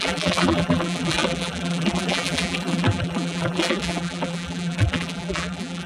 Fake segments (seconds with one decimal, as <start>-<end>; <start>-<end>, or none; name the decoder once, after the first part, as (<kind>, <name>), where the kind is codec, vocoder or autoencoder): 0.0-5.9 (vocoder, BigVGAN v2)